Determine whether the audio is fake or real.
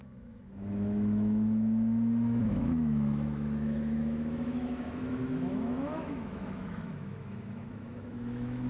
fake